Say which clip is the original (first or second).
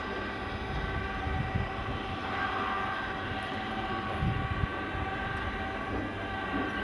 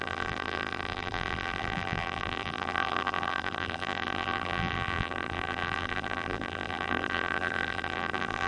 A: first